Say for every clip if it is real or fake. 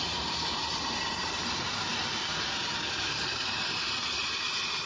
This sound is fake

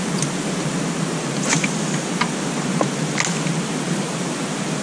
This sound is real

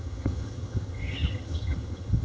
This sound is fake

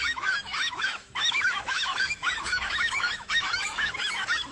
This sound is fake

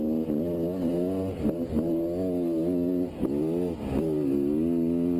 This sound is real